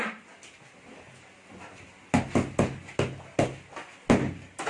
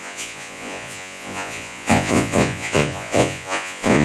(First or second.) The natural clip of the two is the first